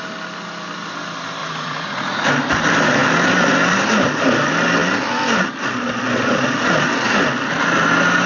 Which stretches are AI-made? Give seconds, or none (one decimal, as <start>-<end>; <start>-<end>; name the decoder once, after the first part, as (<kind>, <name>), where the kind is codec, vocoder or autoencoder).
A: 1.4-2.3 (vocoder, Vocos)